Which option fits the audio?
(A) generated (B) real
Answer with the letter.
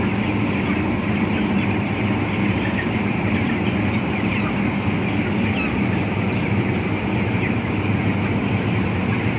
B